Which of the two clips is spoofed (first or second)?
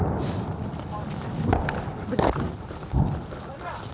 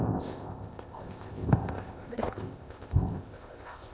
second